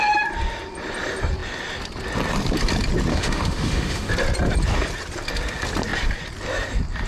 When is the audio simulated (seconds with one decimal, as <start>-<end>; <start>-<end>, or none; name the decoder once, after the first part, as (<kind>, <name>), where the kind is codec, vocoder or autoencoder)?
3.1-4.1 (autoencoder, DAC-VAE)